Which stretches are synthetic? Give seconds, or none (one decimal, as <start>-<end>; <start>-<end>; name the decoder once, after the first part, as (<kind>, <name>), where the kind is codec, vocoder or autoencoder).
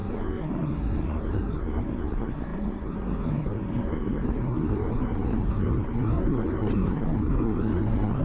0.0-8.2 (codec, SNAC)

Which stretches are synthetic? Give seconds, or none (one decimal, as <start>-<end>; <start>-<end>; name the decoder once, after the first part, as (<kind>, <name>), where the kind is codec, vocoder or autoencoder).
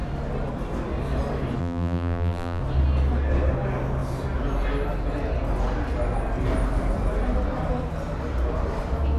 1.6-2.6 (vocoder, BigVGAN v2)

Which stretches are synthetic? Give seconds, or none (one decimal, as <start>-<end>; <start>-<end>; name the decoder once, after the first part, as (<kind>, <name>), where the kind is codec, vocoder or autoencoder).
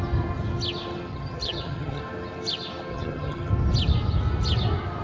1.1-2.0 (vocoder, HiFi-GAN); 2.9-3.5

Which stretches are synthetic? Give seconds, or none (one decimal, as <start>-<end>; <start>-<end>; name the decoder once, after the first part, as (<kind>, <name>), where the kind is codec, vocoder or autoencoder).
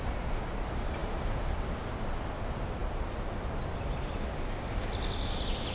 none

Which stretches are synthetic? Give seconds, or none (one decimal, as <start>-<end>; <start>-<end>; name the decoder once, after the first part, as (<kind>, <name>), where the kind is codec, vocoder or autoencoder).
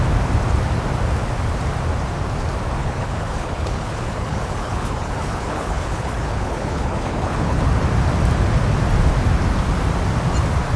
2.8-7.7 (codec, HILCodec)